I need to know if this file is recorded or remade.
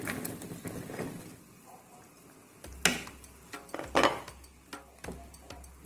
recorded